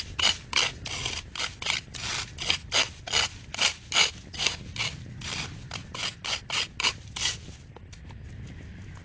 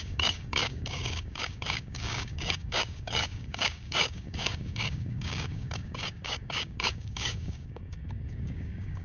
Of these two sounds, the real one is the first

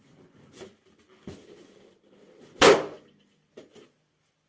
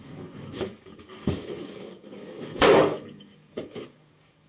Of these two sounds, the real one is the first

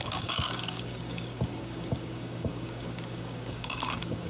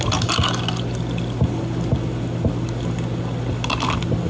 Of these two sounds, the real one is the second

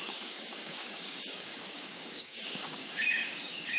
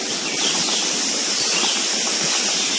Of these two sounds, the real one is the second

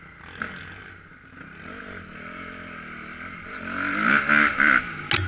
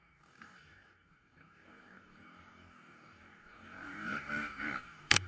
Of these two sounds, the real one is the first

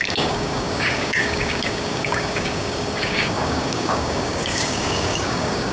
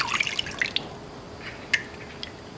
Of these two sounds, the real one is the second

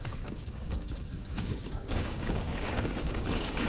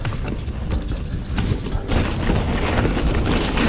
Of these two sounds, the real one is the second